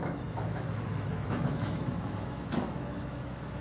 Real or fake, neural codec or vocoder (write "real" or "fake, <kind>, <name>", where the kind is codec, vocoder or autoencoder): fake, autoencoder, DAC-VAE